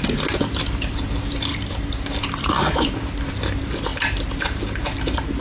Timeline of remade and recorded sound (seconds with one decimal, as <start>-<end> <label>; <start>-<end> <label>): 0.0-5.4 remade